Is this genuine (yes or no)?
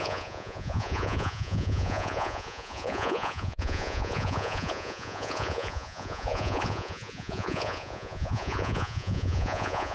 no